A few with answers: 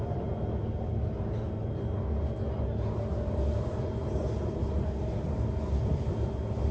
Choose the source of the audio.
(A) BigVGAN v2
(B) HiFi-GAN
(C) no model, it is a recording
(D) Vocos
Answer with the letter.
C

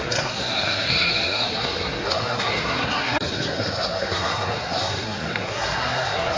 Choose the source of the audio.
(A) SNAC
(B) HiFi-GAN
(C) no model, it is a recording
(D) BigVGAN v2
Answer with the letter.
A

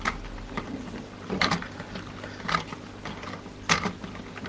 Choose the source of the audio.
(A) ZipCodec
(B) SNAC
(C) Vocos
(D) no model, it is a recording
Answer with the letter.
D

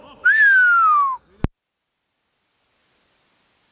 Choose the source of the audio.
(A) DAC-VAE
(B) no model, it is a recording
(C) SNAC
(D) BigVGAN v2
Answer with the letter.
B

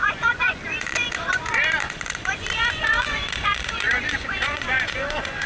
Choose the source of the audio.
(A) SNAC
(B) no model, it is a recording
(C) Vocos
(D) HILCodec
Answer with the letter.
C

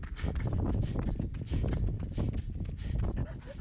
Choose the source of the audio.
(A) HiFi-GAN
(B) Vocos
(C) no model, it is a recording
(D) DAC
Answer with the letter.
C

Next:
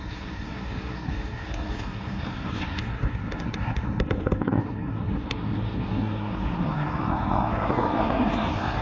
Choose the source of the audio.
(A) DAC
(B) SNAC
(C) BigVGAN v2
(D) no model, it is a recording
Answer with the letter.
B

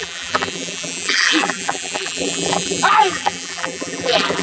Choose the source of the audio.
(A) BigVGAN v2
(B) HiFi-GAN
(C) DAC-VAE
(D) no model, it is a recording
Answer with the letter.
A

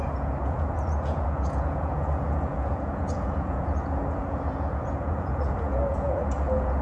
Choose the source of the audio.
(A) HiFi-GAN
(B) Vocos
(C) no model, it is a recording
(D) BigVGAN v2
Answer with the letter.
B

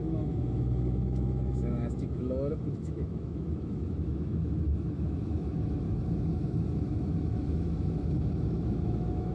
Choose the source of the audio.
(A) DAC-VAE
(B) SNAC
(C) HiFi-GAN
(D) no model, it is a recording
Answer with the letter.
A